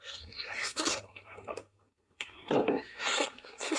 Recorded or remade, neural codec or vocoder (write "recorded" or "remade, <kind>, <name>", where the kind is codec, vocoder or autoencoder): remade, codec, SNAC